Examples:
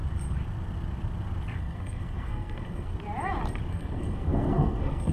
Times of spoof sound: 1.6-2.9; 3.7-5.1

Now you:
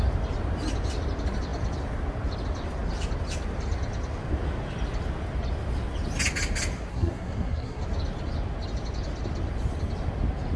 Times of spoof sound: 6.9-7.8

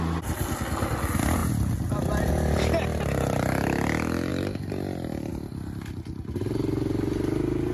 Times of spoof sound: none